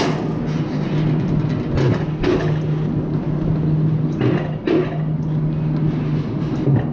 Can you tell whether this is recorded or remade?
recorded